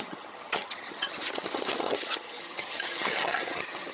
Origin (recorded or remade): remade